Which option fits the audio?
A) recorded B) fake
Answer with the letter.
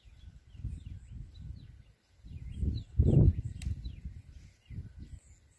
A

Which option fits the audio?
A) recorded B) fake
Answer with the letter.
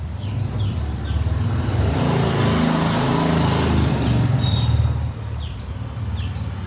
A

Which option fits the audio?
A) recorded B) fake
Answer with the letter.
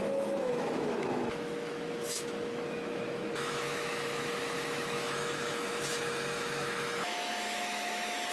B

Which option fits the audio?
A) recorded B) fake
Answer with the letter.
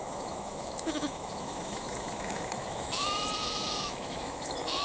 B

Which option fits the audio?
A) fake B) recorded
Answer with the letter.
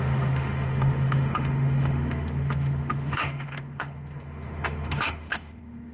A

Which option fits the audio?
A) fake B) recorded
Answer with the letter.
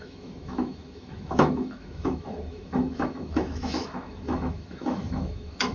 A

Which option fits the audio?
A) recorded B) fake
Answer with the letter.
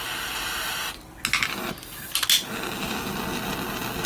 A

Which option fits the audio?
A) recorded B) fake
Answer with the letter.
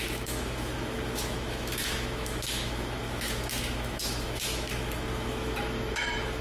B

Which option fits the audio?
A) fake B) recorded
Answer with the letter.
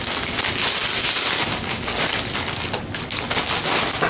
B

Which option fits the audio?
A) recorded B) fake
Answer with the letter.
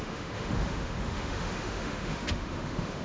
B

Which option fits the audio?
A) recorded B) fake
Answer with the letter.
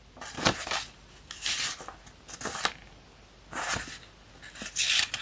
A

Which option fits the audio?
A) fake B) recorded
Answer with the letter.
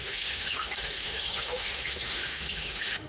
A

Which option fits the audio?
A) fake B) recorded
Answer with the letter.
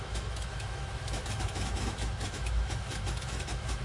A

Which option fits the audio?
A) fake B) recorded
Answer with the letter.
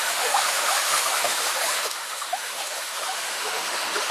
A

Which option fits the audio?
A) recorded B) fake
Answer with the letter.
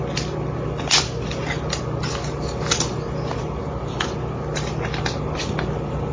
A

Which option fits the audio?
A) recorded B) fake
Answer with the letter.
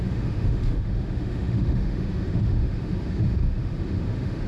B